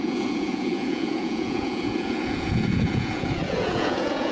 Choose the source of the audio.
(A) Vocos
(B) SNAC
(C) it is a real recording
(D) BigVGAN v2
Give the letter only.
A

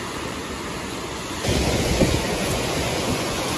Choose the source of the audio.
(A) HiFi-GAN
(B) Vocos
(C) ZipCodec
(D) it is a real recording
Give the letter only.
B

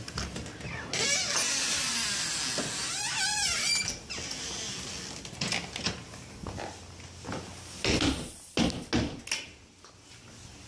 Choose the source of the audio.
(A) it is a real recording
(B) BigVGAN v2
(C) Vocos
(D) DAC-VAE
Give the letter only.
A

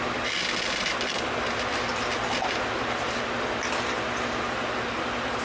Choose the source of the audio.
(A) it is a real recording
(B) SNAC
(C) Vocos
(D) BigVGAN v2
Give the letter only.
A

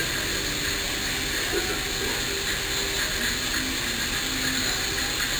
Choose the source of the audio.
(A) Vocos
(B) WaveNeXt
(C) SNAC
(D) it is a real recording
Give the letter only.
D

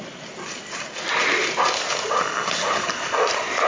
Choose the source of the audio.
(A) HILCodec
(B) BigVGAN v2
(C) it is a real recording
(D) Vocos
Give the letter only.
C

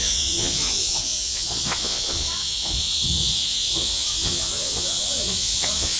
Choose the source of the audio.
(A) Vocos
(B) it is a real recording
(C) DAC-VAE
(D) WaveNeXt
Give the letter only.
A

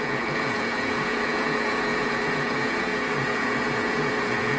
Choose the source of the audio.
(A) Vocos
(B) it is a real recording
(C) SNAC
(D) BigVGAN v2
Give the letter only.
A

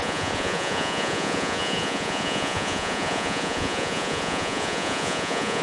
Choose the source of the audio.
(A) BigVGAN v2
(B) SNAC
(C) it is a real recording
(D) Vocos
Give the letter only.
D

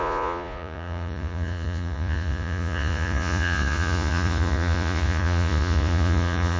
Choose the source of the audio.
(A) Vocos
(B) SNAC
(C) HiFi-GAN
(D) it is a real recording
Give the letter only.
A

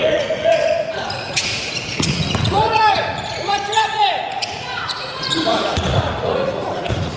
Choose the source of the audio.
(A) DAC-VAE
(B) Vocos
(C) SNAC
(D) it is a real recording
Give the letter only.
B